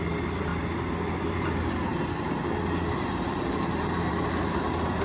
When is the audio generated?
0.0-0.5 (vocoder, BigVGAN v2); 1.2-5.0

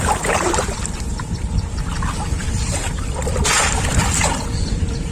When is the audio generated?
none

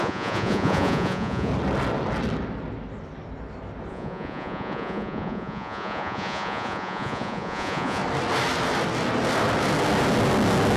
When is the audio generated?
0.0-1.5 (vocoder, Vocos); 3.9-8.0